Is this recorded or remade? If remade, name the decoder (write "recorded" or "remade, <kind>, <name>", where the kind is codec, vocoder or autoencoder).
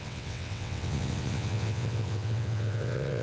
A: remade, vocoder, WaveNeXt